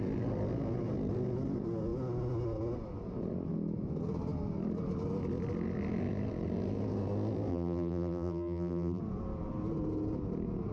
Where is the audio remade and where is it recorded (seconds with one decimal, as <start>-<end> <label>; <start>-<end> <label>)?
0.0-7.5 recorded; 7.5-9.0 remade; 9.0-10.7 recorded

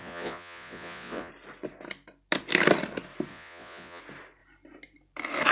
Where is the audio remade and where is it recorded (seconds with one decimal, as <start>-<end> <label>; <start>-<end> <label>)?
0.0-1.3 remade; 1.3-3.3 recorded; 3.3-4.0 remade; 4.0-5.5 recorded

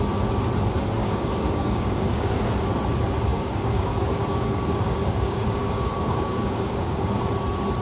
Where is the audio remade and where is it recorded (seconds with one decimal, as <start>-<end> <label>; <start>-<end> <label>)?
0.0-1.0 recorded; 1.0-2.3 remade; 2.3-3.3 recorded; 3.3-7.2 remade; 7.2-7.8 recorded

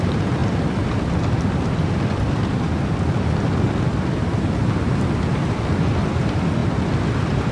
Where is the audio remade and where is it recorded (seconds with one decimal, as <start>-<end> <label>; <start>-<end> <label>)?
0.0-0.4 remade; 0.4-4.9 recorded; 4.9-7.5 remade

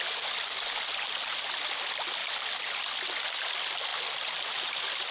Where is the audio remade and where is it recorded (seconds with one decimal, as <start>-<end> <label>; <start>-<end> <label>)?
0.0-2.2 recorded; 2.2-2.9 remade; 2.9-5.1 recorded

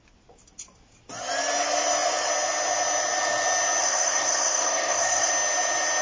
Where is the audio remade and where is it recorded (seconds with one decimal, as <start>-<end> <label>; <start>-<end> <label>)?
0.0-3.8 recorded; 3.8-5.3 remade; 5.3-6.0 recorded

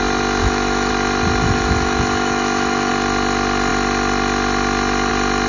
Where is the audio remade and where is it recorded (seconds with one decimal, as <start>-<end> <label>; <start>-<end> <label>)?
0.0-0.4 recorded; 0.4-0.9 remade; 0.9-1.4 recorded; 1.4-2.9 remade; 2.9-5.5 recorded